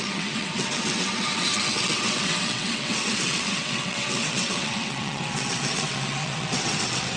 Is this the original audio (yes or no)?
no